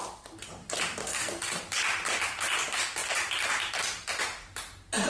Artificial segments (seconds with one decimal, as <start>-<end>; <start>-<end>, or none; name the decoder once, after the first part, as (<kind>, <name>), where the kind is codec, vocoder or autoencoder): 1.0-1.6 (codec, SNAC)